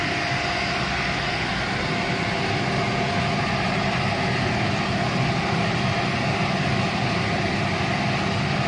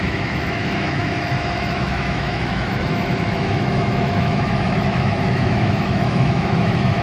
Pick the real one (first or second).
first